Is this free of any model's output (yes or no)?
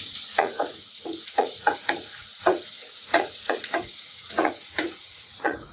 no